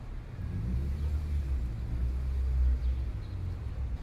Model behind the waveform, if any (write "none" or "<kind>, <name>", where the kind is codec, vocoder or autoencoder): none